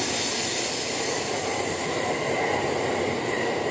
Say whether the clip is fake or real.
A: real